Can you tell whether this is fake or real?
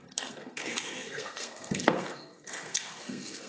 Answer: fake